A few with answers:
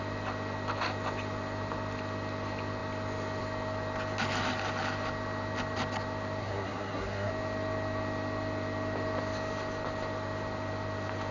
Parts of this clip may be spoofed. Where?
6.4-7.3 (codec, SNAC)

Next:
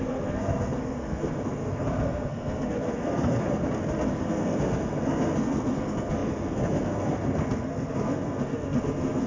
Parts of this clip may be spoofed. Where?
0.0-3.6 (codec, SNAC); 4.1-9.3

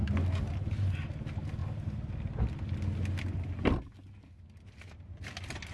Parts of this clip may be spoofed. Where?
none

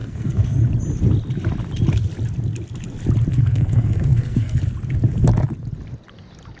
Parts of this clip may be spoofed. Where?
0.0-0.6 (codec, SNAC); 3.3-4.6

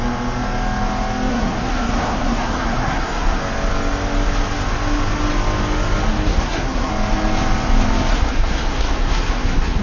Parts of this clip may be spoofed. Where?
1.3-3.4 (codec, SNAC); 6.3-6.9; 8.1-9.8

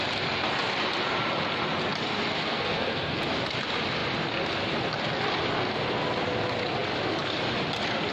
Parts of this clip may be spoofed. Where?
2.4-3.2 (codec, SNAC)